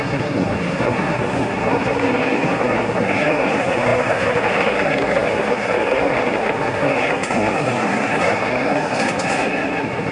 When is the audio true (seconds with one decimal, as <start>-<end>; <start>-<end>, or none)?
none